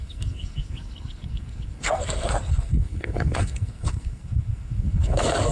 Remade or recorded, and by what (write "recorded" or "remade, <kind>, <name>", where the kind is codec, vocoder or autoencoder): remade, codec, SNAC